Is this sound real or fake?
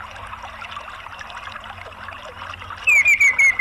real